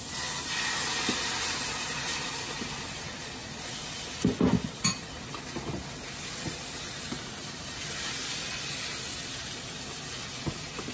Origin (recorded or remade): recorded